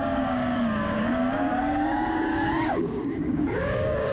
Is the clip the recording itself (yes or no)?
no